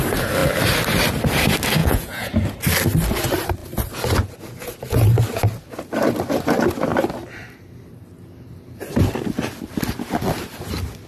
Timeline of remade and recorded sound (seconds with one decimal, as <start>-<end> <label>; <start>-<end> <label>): 0.0-1.8 recorded; 1.8-2.3 remade; 2.3-11.1 recorded